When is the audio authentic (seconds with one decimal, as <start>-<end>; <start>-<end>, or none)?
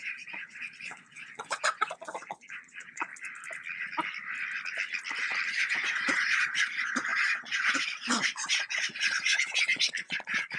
3.1-5.5